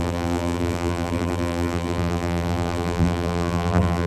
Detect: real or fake fake